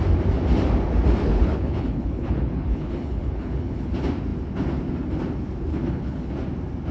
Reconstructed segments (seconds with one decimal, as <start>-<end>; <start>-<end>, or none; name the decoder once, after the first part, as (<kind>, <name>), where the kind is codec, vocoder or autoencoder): 1.2-3.9 (codec, HILCodec); 5.7-6.3